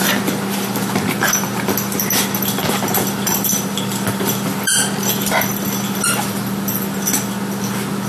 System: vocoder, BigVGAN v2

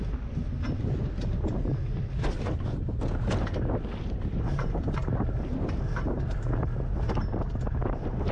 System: none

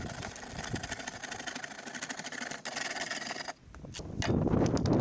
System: none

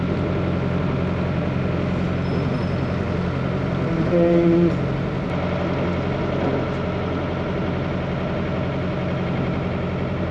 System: none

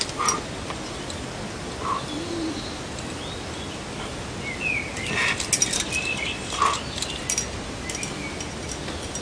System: none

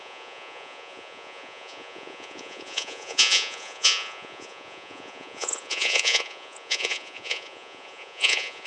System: vocoder, Vocos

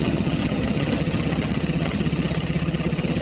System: vocoder, HiFi-GAN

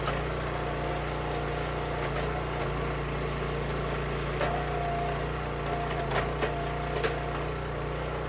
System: none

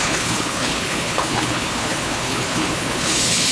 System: codec, HILCodec